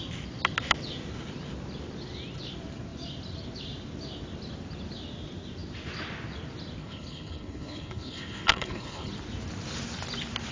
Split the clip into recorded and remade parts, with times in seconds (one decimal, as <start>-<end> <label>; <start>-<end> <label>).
0.0-6.8 recorded; 6.8-9.1 remade; 9.1-10.5 recorded